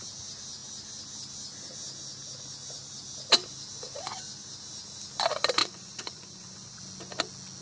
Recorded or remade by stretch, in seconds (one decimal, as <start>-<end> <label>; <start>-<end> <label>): 0.0-5.6 recorded; 5.6-6.8 remade; 6.8-7.6 recorded